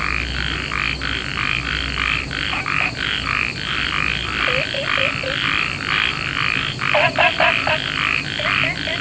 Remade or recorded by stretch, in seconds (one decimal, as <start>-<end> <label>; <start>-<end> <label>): 0.0-1.3 recorded; 1.3-2.9 remade; 2.9-9.0 recorded